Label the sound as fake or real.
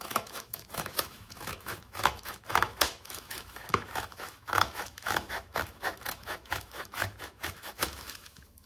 fake